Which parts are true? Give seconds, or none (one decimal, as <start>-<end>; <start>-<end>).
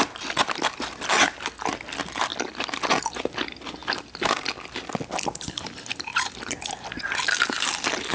0.0-8.1